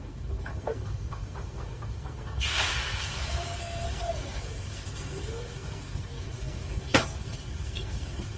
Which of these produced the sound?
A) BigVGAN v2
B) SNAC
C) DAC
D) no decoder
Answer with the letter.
B